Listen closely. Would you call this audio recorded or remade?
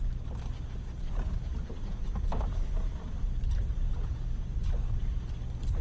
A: recorded